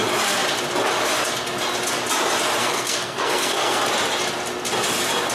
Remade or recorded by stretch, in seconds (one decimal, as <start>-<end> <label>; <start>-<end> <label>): 0.0-2.6 recorded; 2.6-3.8 remade; 3.8-5.3 recorded